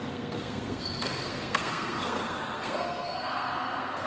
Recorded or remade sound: remade